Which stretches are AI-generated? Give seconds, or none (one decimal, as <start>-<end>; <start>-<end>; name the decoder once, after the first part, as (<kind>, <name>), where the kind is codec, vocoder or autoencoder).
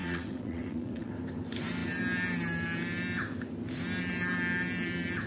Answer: 0.0-1.1 (vocoder, WaveNeXt)